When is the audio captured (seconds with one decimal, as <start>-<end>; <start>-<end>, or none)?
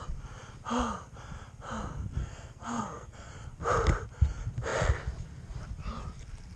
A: 0.0-2.2; 3.3-6.6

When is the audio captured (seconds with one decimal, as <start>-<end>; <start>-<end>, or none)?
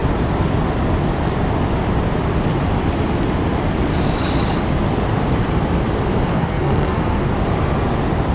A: 0.0-6.3; 7.3-8.3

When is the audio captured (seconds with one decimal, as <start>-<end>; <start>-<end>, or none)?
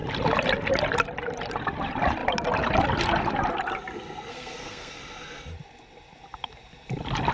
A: 0.0-4.3; 5.0-7.3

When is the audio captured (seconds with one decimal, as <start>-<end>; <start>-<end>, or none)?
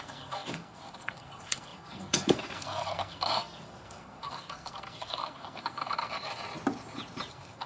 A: 6.3-7.3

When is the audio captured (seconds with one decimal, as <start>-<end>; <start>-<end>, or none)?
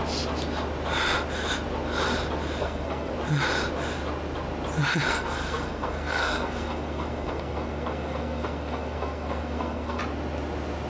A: 0.0-2.6; 3.1-5.1; 10.0-10.9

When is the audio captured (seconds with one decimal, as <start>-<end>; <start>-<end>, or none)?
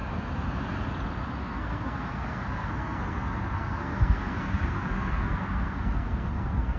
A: 0.0-1.4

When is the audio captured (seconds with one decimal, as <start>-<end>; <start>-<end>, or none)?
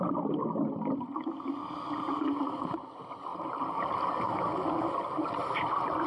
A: 0.0-6.1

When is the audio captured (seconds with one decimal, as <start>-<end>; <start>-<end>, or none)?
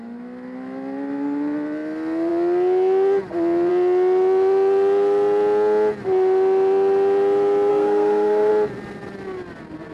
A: 0.0-7.7; 8.5-9.9